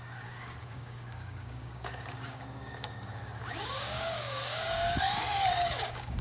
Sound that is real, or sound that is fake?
fake